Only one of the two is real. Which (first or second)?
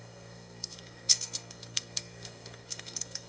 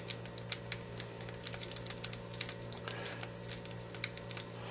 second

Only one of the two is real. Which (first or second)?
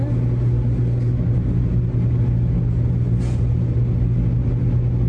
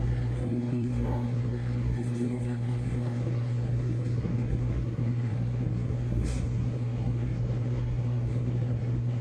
first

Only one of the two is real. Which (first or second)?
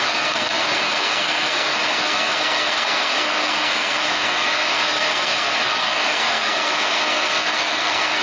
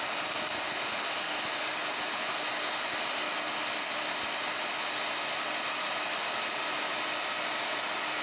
second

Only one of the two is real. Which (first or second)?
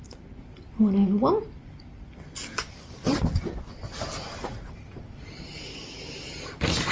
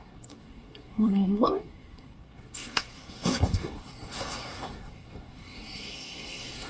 first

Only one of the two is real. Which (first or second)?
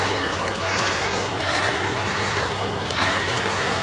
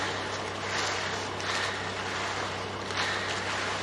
second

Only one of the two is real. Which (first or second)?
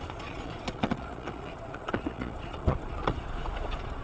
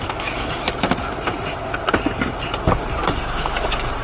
second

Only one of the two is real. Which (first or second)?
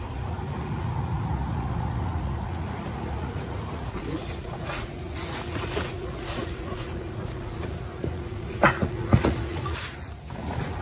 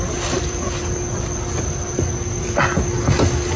second